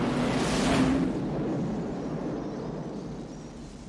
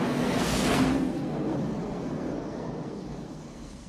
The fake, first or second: second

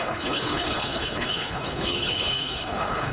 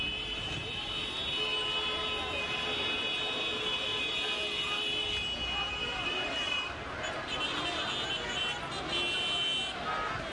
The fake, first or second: first